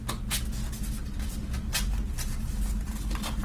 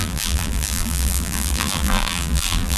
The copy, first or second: second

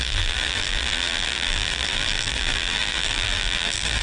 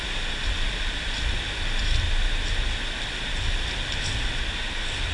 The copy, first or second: first